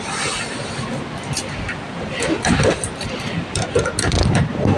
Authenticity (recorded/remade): recorded